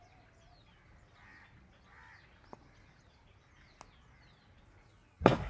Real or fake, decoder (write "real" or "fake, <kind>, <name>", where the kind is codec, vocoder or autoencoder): real